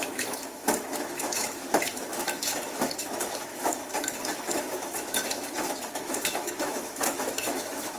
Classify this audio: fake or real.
fake